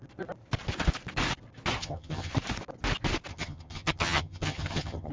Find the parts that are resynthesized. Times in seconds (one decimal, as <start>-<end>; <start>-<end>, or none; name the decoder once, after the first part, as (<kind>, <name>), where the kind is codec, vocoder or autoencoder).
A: 1.8-2.3 (vocoder, HiFi-GAN); 3.3-5.1

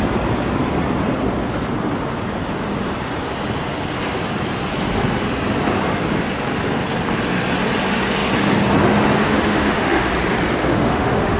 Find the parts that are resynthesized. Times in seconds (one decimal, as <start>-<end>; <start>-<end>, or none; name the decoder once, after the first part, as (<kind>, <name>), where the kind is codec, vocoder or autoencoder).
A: 9.2-10.1 (autoencoder, DAC-VAE); 10.6-11.4

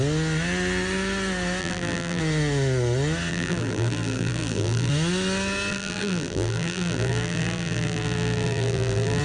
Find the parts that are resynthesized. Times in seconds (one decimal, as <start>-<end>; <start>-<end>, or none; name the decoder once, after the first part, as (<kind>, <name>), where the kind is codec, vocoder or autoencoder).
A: 1.6-2.2 (vocoder, BigVGAN v2); 3.3-4.9; 5.7-9.2

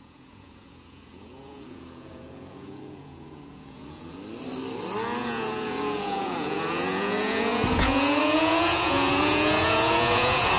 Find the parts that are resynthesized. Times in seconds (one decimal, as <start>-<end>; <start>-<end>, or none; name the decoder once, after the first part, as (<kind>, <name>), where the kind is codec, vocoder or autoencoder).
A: 0.0-4.2 (vocoder, Vocos); 5.2-10.6

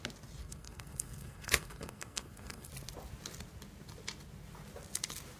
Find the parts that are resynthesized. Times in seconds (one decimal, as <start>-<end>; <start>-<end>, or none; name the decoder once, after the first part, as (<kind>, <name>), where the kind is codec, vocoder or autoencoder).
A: 0.4-2.7 (codec, SNAC)

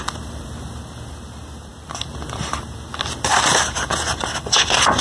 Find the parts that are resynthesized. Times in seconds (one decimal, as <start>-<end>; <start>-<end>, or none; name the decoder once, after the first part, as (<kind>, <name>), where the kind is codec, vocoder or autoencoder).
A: none